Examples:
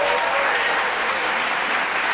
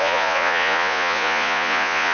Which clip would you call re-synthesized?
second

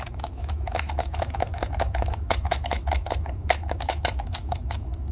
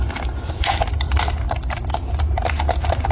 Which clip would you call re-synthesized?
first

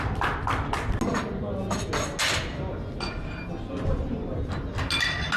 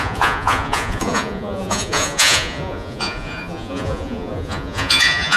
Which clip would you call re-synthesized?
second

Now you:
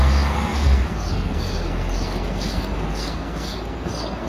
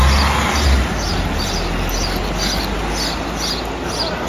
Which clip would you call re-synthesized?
first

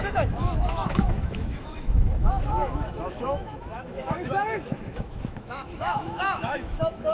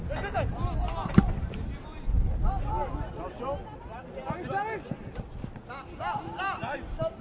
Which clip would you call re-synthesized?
first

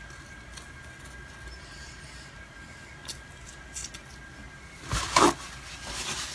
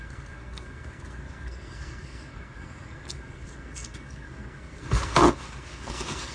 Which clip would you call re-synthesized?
second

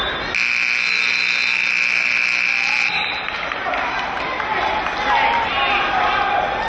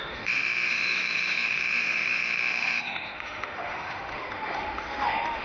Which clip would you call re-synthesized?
second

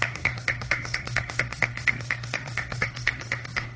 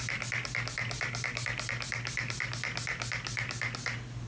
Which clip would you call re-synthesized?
first